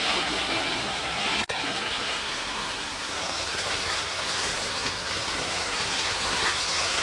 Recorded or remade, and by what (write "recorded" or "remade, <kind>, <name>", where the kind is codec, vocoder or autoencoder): remade, codec, SNAC